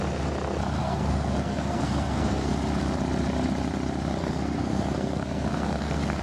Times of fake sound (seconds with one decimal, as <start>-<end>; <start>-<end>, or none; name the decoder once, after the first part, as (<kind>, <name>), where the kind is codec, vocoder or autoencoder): 0.8-2.5 (codec, SNAC); 4.2-6.2